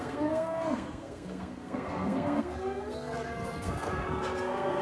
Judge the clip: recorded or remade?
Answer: remade